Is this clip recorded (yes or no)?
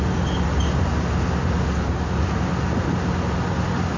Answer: yes